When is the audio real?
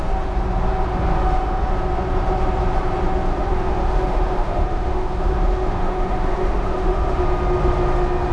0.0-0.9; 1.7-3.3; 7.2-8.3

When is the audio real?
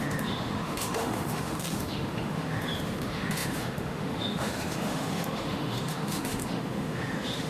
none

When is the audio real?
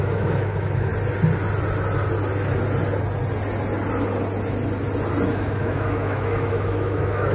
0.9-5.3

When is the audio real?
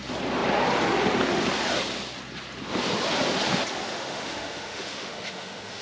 0.0-3.9